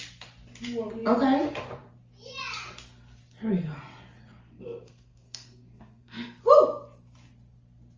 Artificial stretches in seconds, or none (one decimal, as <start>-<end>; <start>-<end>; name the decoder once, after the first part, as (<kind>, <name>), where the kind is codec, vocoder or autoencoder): 4.4-6.4 (codec, SNAC)